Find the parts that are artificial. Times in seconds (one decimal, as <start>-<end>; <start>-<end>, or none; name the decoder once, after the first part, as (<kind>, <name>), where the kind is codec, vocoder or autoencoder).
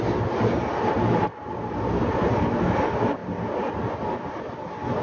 none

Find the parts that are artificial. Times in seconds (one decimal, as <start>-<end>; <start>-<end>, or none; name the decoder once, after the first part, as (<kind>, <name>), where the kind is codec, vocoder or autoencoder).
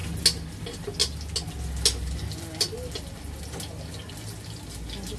none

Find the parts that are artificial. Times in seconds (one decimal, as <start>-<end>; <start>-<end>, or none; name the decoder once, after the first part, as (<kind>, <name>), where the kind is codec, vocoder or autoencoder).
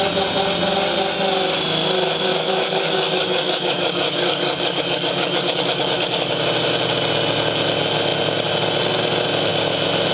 2.3-6.4 (codec, DAC)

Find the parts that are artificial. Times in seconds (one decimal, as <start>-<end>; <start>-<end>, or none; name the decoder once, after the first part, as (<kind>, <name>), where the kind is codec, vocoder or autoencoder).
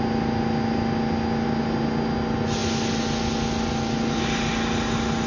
none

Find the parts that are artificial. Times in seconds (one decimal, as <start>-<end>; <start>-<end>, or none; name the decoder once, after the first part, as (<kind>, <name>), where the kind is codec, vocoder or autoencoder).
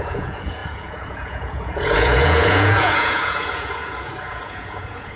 0.0-5.2 (vocoder, Vocos)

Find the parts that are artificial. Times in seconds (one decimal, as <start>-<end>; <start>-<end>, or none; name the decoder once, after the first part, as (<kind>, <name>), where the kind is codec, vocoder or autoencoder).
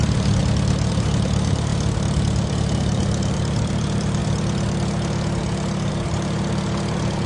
0.0-0.4 (vocoder, BigVGAN v2); 0.9-1.7; 2.8-4.2; 5.9-7.3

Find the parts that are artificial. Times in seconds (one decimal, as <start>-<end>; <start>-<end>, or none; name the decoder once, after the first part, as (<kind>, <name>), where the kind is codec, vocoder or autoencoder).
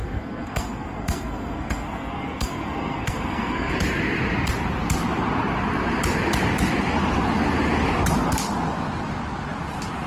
0.0-3.7 (codec, SNAC)